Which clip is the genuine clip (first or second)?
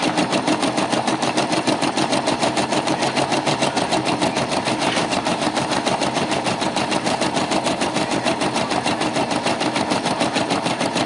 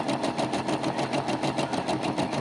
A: second